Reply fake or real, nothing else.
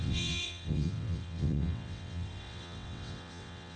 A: fake